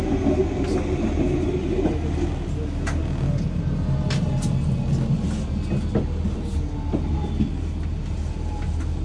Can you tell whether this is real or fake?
real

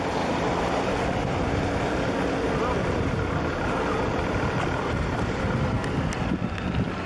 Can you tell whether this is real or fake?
real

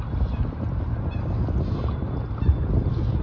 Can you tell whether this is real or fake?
real